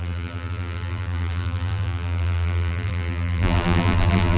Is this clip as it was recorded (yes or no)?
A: no